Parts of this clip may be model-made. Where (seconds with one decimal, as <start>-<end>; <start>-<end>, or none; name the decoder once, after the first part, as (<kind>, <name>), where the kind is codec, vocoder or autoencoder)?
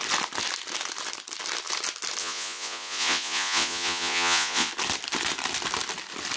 2.2-4.7 (vocoder, Vocos)